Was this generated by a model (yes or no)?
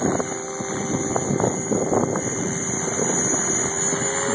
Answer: no